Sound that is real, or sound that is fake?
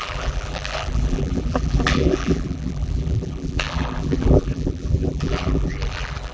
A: fake